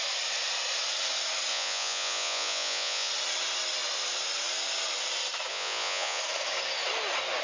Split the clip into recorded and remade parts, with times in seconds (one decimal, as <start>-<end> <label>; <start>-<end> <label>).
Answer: 0.0-1.5 recorded; 1.5-3.1 remade; 3.1-5.5 recorded; 5.5-6.2 remade; 6.2-7.4 recorded